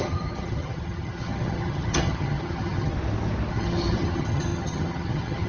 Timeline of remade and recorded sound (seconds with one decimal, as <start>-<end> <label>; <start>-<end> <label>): 0.0-2.9 remade; 2.9-3.5 recorded; 3.5-5.5 remade

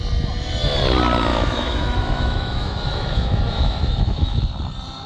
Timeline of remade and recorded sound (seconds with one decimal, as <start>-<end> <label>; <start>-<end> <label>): 0.0-1.3 recorded; 1.3-4.4 remade; 4.4-5.1 recorded